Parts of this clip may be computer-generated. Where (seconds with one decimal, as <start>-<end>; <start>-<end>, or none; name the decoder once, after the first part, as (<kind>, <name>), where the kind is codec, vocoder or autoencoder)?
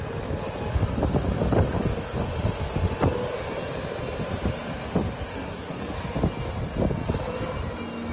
5.3-5.8 (codec, SNAC)